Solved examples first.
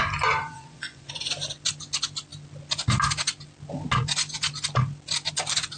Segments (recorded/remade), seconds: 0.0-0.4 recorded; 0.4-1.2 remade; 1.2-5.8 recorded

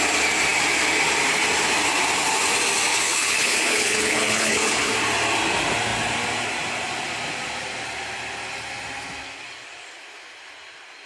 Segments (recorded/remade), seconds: 0.0-2.9 recorded; 2.9-4.9 remade; 4.9-11.1 recorded

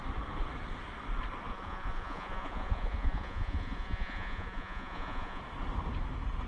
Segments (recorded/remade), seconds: 0.0-1.5 recorded; 1.5-5.4 remade; 5.4-6.5 recorded

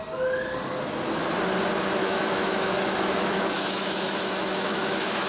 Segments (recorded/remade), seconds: 0.0-2.0 recorded; 2.0-5.3 remade

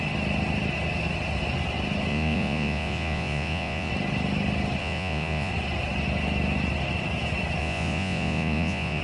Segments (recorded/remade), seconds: 0.0-2.1 recorded; 2.1-3.9 remade; 3.9-4.8 recorded; 4.8-5.5 remade; 5.5-7.6 recorded; 7.6-9.0 remade

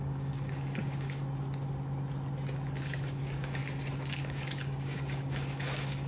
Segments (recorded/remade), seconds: 0.0-1.2 remade; 1.2-2.8 recorded; 2.8-3.6 remade; 3.6-4.2 recorded; 4.2-6.1 remade

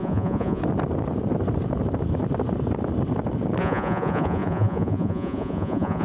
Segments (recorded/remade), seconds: 0.0-0.6 remade; 0.6-3.6 recorded; 3.6-6.0 remade

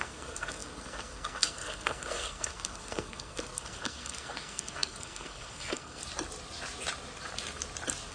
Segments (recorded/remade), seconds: 0.0-6.0 remade; 6.0-8.1 recorded